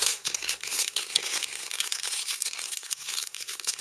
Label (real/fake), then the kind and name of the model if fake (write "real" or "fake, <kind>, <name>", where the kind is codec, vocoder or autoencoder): fake, codec, SNAC